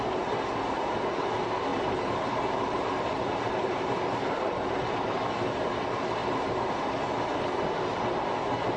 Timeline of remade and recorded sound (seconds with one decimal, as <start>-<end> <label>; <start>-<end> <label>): 0.0-1.7 recorded; 1.7-5.2 remade; 5.2-6.2 recorded; 6.2-6.9 remade; 6.9-8.8 recorded